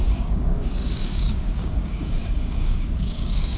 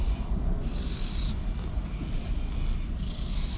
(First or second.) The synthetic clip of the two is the first